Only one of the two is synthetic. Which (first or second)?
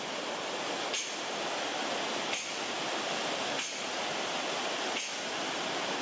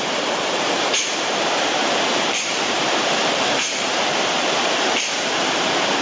second